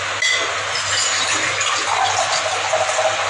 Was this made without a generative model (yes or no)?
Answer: yes